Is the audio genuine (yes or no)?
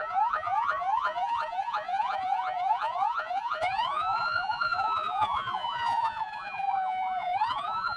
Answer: no